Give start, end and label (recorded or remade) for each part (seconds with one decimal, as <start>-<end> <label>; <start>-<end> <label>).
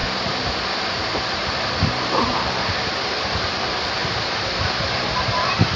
0.0-0.8 recorded; 0.8-5.8 remade